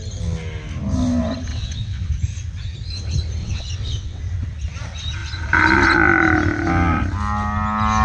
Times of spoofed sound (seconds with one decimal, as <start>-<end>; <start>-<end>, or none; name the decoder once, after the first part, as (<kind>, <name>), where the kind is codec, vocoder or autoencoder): 1.5-2.1 (vocoder, WaveNeXt); 3.4-4.2